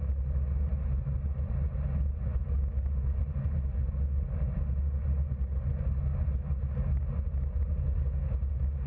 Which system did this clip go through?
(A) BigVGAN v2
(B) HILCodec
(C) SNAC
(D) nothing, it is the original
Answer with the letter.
D